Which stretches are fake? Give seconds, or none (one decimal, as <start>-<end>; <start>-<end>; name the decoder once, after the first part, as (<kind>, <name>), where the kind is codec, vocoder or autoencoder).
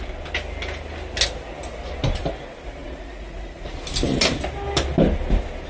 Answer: 2.8-3.7 (vocoder, Vocos)